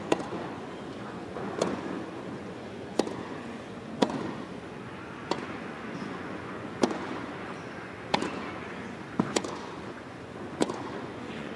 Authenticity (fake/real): fake